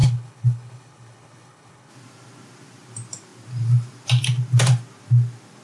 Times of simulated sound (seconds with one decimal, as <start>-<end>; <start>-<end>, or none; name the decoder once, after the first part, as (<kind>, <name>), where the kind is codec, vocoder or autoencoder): 0.0-1.9 (codec, HILCodec)